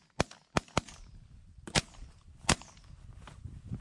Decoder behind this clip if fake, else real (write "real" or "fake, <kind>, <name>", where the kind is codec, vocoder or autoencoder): real